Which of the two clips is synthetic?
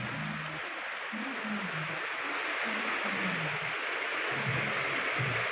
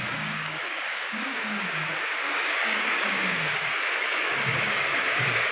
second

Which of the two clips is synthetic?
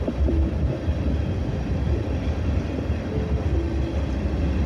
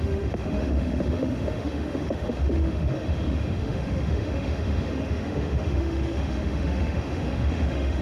second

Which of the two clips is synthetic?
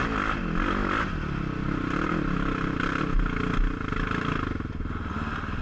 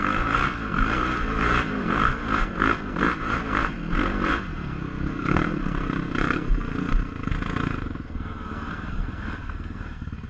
second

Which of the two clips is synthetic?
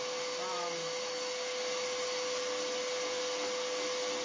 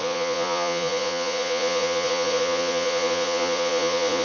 second